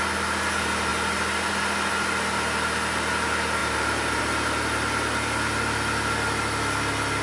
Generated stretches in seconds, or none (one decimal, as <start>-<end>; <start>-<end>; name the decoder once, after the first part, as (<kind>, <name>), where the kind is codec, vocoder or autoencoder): 3.6-4.2 (vocoder, BigVGAN v2)